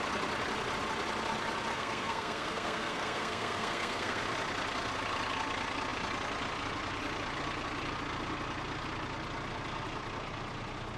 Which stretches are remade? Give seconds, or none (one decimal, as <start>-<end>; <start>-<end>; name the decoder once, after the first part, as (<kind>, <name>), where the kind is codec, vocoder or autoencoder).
1.7-4.2 (codec, SNAC)

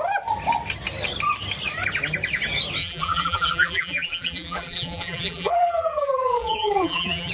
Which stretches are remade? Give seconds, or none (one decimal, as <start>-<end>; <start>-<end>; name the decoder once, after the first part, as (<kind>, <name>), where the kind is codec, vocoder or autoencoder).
2.8-7.3 (vocoder, BigVGAN v2)

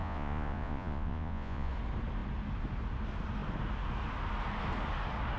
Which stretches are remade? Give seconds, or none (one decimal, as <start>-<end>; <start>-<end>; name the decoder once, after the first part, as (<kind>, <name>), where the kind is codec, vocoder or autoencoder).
0.0-1.7 (vocoder, Vocos)

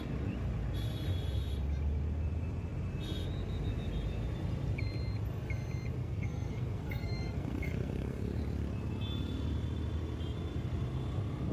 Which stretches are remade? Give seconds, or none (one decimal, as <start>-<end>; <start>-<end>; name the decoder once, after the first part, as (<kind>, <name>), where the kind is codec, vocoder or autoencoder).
6.0-8.4 (codec, SNAC)